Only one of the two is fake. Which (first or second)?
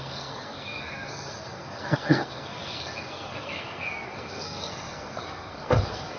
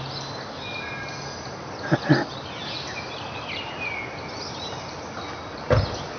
first